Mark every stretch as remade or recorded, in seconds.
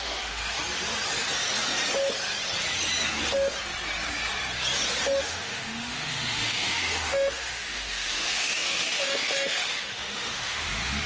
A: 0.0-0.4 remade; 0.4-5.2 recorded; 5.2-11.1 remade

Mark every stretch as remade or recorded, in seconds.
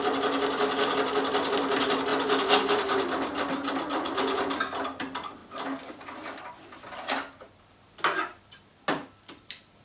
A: 0.0-9.8 recorded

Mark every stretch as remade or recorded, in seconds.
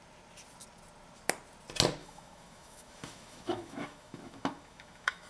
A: 0.0-2.0 recorded; 2.0-5.3 remade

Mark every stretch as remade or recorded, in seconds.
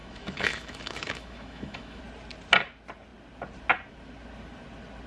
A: 0.0-2.0 remade; 2.0-5.1 recorded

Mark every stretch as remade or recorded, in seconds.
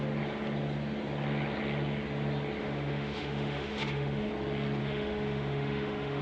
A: 0.0-2.6 recorded; 2.6-4.3 remade; 4.3-4.8 recorded; 4.8-6.2 remade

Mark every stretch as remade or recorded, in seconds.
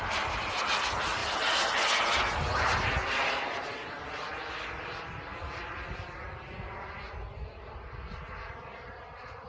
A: 0.0-9.5 recorded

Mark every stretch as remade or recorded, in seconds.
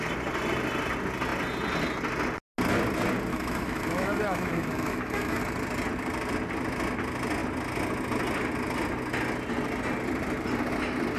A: 0.0-3.3 recorded; 3.3-5.4 remade; 5.4-11.2 recorded